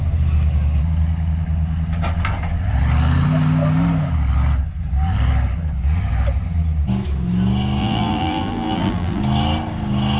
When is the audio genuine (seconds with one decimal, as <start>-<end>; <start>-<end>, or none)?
0.0-7.8; 9.2-10.2